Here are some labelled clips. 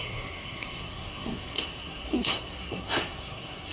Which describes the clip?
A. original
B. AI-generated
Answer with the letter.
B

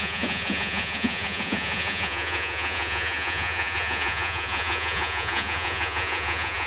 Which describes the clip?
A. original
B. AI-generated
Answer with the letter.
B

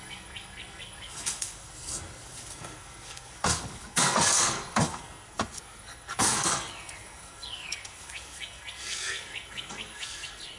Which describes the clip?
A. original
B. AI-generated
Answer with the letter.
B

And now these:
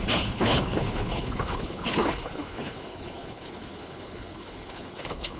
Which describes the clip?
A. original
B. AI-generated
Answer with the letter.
B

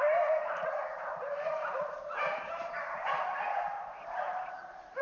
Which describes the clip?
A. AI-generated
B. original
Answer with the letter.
A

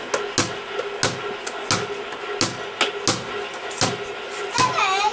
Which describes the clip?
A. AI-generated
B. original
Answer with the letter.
B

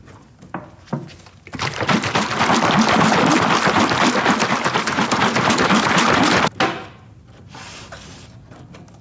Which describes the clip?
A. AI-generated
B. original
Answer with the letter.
B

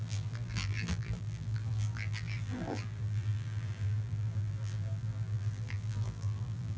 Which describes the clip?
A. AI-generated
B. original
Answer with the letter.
A